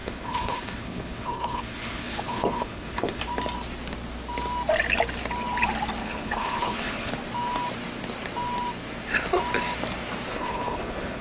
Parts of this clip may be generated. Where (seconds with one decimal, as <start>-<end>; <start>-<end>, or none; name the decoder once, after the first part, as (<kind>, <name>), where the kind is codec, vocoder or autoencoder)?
0.0-3.2 (codec, HILCodec); 6.0-7.1; 10.3-11.2